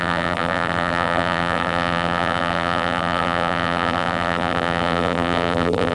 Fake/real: fake